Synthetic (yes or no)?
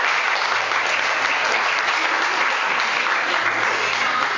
no